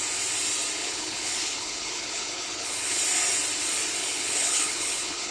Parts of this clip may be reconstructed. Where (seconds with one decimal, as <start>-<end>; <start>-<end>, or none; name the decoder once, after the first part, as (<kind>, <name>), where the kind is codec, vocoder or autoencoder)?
0.8-3.0 (codec, HILCodec); 4.0-5.3